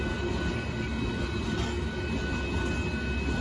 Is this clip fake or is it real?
real